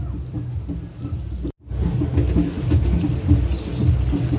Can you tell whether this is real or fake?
real